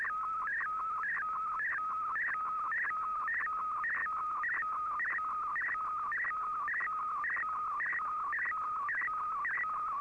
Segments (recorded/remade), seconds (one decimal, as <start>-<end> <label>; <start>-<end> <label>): 0.0-10.0 recorded